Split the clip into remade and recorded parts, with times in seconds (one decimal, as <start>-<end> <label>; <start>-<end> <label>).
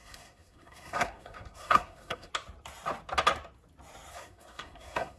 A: 0.0-2.3 remade; 2.3-4.1 recorded; 4.1-5.2 remade